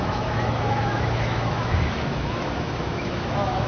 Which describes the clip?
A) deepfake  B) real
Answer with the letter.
A